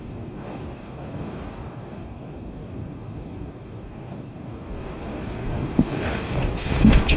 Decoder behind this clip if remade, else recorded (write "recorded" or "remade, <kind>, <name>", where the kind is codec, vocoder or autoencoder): remade, codec, DAC